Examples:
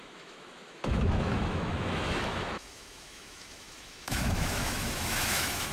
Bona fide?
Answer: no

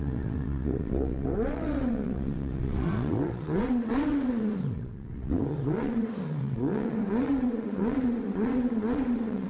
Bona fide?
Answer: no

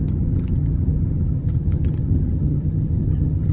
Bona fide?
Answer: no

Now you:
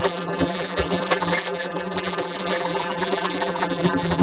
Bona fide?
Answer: no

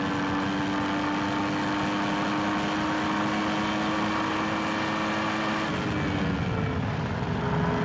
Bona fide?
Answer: yes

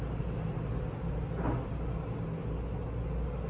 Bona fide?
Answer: yes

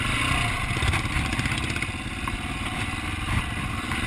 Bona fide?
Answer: yes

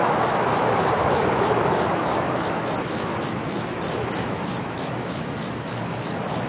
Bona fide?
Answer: no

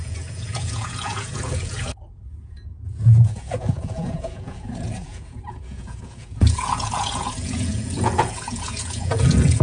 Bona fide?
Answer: no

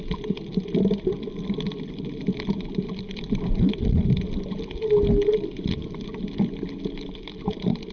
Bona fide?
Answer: yes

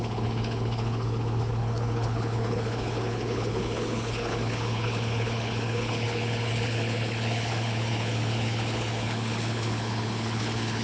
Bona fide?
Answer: no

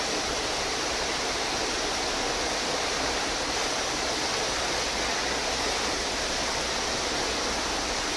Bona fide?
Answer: yes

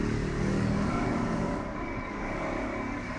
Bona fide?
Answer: no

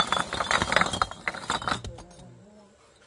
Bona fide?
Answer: yes